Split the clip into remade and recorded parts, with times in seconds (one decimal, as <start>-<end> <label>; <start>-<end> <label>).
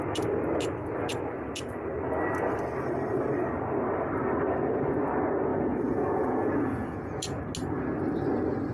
0.0-5.5 recorded; 5.5-7.4 remade; 7.4-8.7 recorded